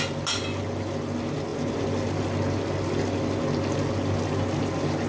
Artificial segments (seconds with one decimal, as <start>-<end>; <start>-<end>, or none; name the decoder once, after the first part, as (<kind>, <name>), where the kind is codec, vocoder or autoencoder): none